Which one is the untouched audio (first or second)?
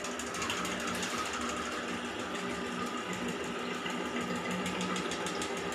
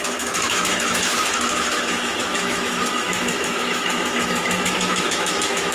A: first